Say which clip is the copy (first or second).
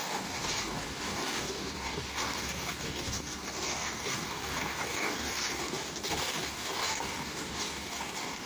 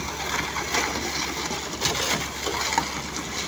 first